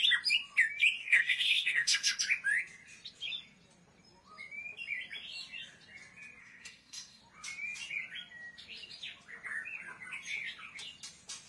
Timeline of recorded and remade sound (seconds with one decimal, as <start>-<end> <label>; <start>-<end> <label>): 0.0-1.0 recorded; 1.0-2.2 remade; 2.2-6.4 recorded; 6.4-7.2 remade; 7.2-11.5 recorded